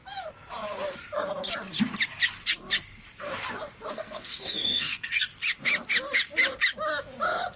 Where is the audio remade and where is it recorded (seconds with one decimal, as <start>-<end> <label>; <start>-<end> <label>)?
0.0-3.9 recorded; 3.9-5.3 remade; 5.3-7.6 recorded